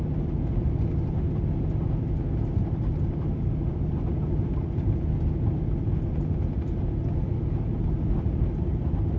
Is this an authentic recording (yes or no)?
yes